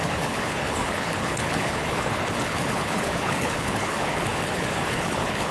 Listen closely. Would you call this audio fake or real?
fake